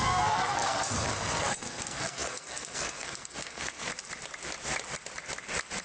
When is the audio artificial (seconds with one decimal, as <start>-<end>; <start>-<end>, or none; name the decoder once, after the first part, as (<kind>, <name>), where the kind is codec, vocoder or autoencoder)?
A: 0.0-3.9 (codec, SNAC)